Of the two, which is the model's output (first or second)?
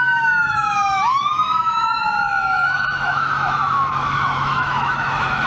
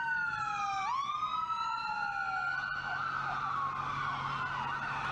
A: first